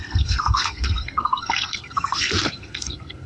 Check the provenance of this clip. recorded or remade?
remade